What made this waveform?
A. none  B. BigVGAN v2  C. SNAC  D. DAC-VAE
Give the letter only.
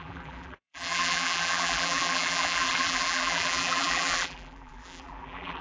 B